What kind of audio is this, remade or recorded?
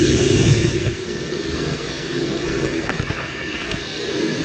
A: remade